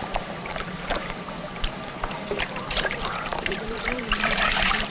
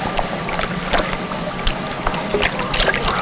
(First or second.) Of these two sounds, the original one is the second